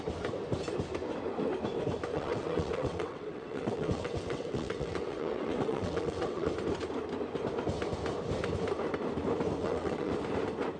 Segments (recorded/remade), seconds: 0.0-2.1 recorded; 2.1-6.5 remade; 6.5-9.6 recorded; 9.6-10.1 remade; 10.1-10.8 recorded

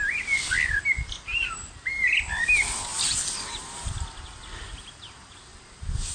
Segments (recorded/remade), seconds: 0.0-6.1 recorded

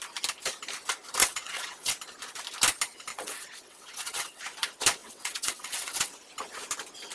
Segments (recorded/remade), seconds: 0.0-1.2 recorded; 1.2-1.9 remade; 1.9-3.1 recorded; 3.1-4.4 remade; 4.4-5.0 recorded; 5.0-6.1 remade; 6.1-7.1 recorded